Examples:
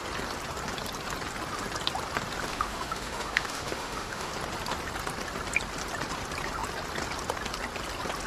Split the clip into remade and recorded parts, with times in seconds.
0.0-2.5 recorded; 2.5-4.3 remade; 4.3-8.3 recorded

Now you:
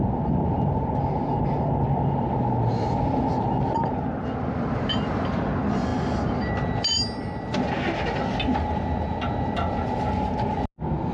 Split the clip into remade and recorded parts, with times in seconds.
0.0-11.1 recorded

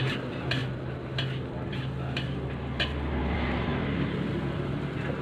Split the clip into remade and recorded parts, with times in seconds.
0.0-5.2 recorded